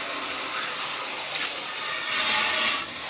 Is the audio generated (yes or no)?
no